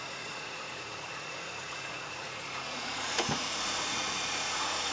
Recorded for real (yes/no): no